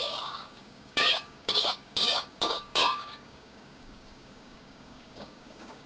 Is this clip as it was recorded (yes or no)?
no